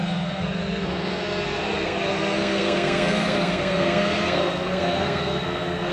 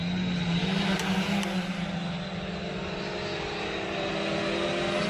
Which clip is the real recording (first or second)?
second